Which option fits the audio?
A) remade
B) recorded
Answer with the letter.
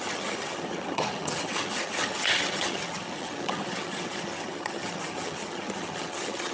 A